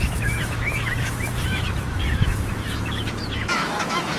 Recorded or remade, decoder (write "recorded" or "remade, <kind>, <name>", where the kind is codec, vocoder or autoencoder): remade, autoencoder, DAC-VAE